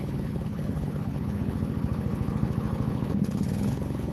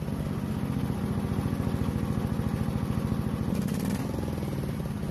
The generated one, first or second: first